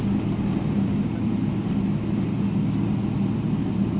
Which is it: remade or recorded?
recorded